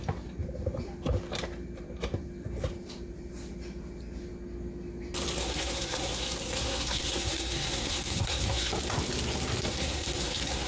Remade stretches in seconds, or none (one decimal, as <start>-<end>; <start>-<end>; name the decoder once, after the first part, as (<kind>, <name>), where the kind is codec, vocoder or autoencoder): 5.4-8.7 (codec, SNAC); 9.7-10.7

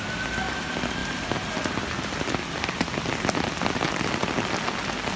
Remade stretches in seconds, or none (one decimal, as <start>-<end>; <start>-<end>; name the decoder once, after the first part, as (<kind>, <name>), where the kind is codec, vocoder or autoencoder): none